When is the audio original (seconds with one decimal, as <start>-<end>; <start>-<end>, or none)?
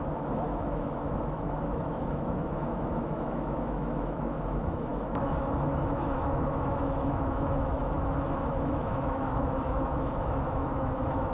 none